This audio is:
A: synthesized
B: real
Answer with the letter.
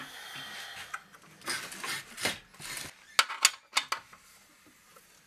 B